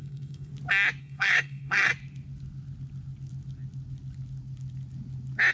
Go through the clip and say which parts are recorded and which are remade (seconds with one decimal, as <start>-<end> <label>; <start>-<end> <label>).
0.0-0.5 remade; 0.5-1.0 recorded; 1.0-1.9 remade; 1.9-5.5 recorded